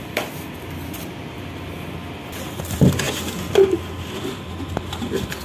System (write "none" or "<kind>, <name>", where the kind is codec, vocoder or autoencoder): none